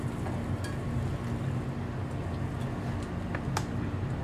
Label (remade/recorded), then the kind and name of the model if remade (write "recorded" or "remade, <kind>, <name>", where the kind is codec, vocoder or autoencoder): recorded